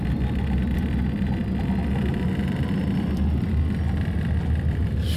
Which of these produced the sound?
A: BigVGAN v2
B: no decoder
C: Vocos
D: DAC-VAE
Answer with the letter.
A